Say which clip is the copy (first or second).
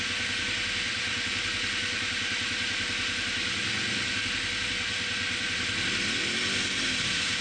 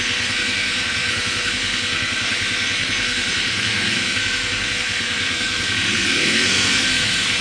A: second